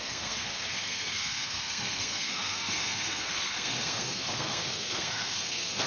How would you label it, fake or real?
fake